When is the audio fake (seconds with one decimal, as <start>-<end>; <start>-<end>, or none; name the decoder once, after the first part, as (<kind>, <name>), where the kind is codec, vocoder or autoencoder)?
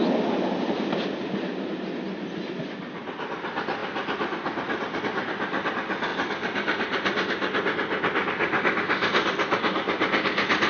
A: none